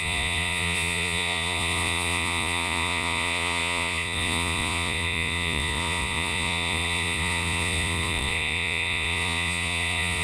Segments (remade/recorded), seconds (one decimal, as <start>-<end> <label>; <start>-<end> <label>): 0.0-10.2 remade